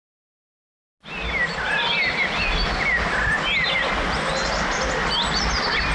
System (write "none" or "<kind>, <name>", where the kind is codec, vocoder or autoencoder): none